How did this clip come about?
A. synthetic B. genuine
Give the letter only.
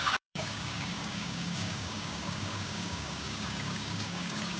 A